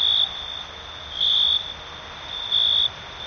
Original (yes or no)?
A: yes